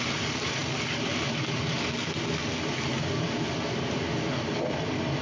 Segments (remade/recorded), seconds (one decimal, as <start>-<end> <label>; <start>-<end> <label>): 0.0-5.2 recorded